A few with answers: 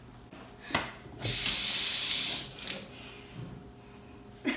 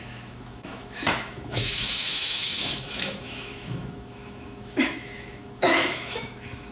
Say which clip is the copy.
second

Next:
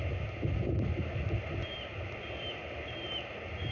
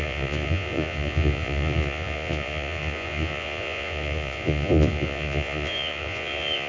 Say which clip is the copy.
second